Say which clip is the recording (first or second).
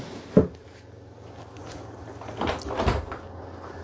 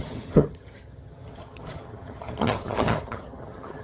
first